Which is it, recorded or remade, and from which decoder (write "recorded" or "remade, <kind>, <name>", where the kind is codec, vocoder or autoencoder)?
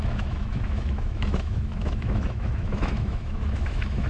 remade, autoencoder, DAC-VAE